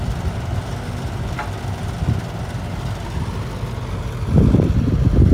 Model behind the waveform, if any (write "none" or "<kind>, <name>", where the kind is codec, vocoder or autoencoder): none